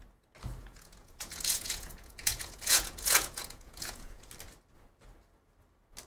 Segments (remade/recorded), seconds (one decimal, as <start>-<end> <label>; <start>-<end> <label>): 0.0-0.6 recorded; 0.6-4.3 remade; 4.3-6.1 recorded